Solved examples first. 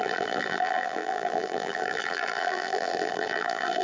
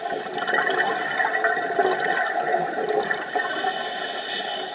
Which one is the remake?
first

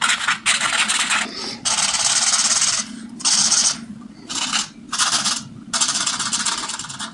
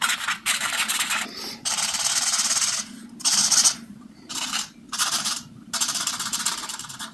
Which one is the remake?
second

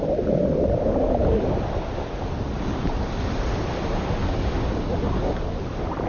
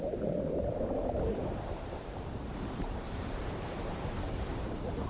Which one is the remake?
second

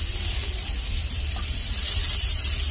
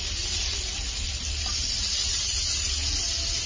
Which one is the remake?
first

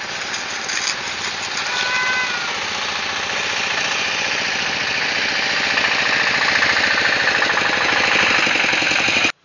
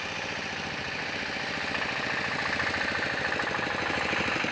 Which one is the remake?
second